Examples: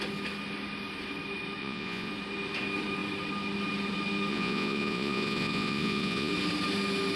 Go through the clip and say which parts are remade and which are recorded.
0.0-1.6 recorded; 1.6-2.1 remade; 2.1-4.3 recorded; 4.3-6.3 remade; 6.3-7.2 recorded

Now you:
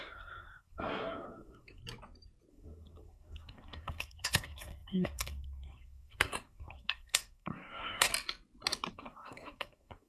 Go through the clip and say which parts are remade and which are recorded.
0.0-1.8 remade; 1.8-2.5 recorded; 2.5-8.1 remade; 8.1-8.9 recorded; 8.9-10.1 remade

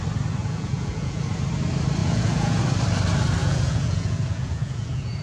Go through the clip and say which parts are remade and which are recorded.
0.0-0.4 recorded; 0.4-1.2 remade; 1.2-2.0 recorded; 2.0-2.6 remade; 2.6-3.4 recorded; 3.4-5.2 remade

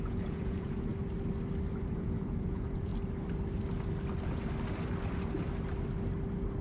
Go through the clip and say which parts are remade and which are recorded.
0.0-0.9 remade; 0.9-1.8 recorded; 1.8-2.9 remade; 2.9-6.6 recorded

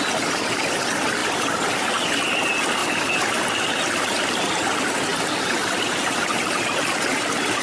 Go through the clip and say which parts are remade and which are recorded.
0.0-1.2 recorded; 1.2-1.7 remade; 1.7-2.8 recorded; 2.8-3.4 remade; 3.4-5.1 recorded; 5.1-6.2 remade; 6.2-7.6 recorded

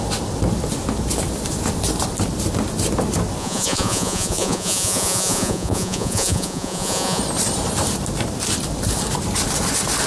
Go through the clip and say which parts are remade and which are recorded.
0.0-3.4 recorded; 3.4-7.2 remade; 7.2-10.1 recorded

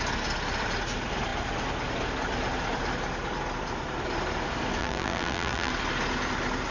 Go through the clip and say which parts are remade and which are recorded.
0.0-4.8 recorded; 4.8-5.7 remade; 5.7-6.7 recorded

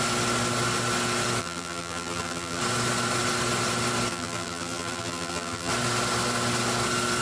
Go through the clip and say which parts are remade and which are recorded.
0.0-1.4 recorded; 1.4-2.6 remade; 2.6-4.1 recorded; 4.1-5.7 remade; 5.7-7.2 recorded